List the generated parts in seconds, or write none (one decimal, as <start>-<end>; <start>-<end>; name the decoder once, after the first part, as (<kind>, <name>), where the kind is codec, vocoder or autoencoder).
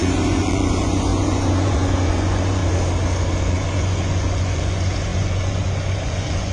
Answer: 0.0-2.6 (vocoder, Vocos); 3.5-6.5